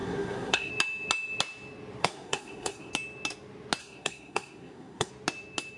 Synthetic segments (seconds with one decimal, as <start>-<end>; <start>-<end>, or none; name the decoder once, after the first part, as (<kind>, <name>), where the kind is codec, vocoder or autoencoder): 0.0-0.7 (codec, SNAC); 2.0-2.9; 3.8-5.1